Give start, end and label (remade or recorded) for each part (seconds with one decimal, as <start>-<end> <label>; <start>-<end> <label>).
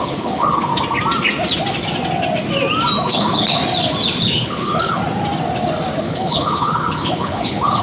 0.0-0.7 remade; 0.7-3.1 recorded; 3.1-3.6 remade; 3.6-4.2 recorded; 4.2-5.0 remade; 5.0-6.0 recorded; 6.0-7.8 remade